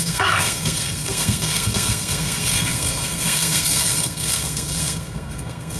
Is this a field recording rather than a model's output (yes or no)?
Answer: no